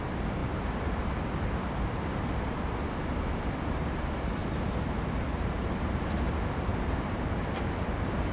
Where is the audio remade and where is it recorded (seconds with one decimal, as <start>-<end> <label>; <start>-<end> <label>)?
0.0-4.4 recorded; 4.4-6.0 remade; 6.0-6.7 recorded; 6.7-7.7 remade; 7.7-8.3 recorded